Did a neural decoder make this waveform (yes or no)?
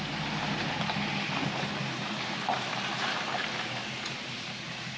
yes